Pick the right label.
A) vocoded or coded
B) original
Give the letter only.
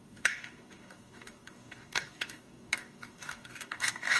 A